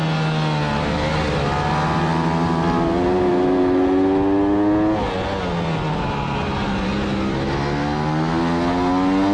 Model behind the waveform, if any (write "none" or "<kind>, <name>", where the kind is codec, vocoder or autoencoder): none